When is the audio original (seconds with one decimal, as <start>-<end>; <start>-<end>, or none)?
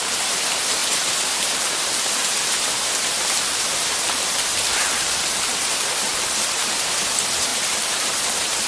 none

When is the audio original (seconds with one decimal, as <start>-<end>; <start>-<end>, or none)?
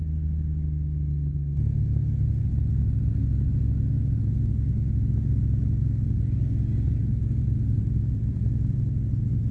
0.0-9.5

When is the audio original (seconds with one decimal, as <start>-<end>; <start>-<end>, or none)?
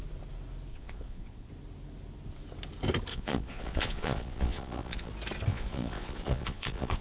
0.0-0.7; 1.5-3.1; 5.1-5.5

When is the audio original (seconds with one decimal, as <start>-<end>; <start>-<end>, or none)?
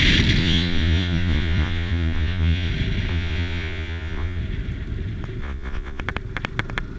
0.0-0.4; 2.7-3.1; 4.4-5.4; 6.0-7.0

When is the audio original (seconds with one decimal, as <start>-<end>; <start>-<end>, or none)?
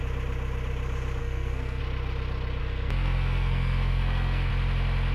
0.0-1.2; 1.8-2.6; 4.5-5.1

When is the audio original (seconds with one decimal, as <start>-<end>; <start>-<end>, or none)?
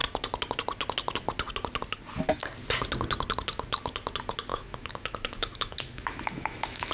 0.0-4.5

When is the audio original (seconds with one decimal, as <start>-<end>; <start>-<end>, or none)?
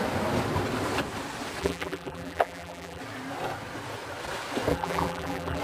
0.0-1.6; 3.0-4.7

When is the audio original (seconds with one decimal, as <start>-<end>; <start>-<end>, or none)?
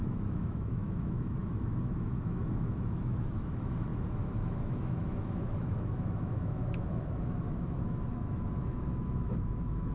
none